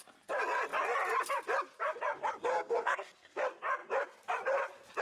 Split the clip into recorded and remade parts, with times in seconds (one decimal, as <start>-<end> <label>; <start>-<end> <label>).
0.0-2.5 recorded; 2.5-3.4 remade; 3.4-5.0 recorded